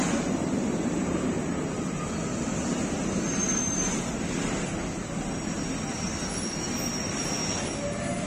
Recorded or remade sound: recorded